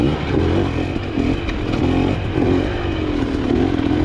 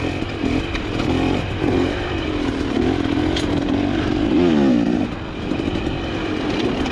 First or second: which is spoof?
second